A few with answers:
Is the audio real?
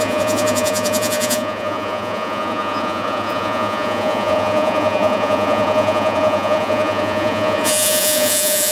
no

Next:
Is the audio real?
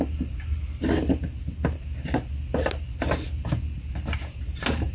yes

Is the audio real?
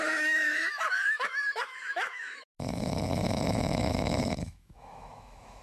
no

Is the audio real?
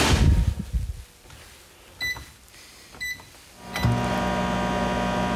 yes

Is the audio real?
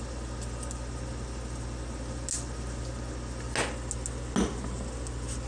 yes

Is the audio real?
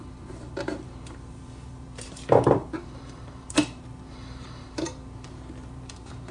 no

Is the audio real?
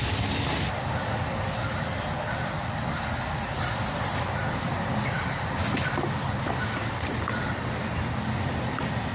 yes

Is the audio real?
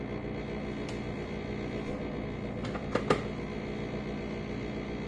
yes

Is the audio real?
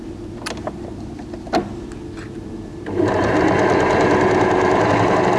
yes